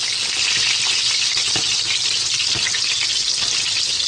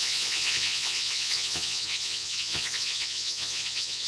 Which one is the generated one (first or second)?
second